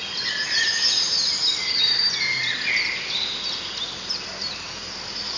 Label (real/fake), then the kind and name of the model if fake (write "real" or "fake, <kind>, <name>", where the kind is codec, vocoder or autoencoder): real